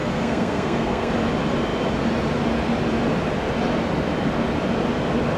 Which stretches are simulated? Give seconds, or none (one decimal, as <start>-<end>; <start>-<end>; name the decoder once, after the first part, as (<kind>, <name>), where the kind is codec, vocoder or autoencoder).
0.0-1.1 (codec, SNAC)

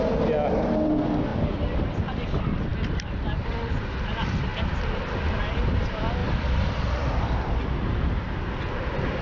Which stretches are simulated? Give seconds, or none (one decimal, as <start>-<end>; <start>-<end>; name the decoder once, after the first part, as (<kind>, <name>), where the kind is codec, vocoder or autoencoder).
1.3-1.8 (vocoder, BigVGAN v2); 2.7-3.4; 4.5-5.0; 6.2-7.5

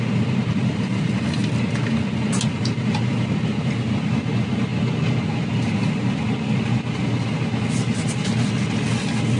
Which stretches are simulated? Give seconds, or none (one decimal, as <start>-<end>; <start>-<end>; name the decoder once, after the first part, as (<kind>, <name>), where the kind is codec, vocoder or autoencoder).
none

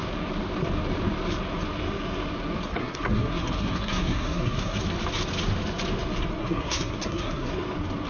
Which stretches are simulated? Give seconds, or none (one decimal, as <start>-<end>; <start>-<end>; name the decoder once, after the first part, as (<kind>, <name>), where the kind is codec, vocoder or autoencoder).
2.7-4.8 (codec, SNAC); 6.4-7.5

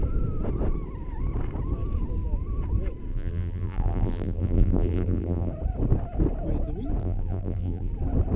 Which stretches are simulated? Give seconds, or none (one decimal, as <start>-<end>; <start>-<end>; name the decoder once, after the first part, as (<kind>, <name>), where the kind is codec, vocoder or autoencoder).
3.1-5.5 (vocoder, BigVGAN v2); 7.0-7.9

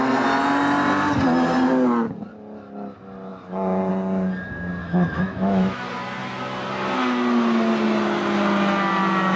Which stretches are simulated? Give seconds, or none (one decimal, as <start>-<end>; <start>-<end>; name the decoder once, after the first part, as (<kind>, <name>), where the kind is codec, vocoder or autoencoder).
4.8-5.8 (autoencoder, DAC-VAE)

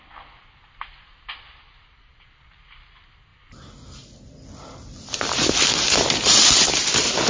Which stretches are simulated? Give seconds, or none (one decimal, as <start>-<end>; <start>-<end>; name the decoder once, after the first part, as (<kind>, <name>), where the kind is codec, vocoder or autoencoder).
none